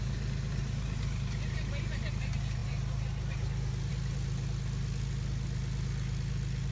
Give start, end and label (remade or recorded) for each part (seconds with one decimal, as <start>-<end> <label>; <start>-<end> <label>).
0.0-6.7 recorded